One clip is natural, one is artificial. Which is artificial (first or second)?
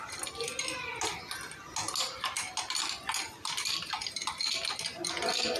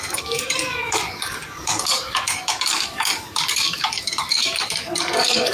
second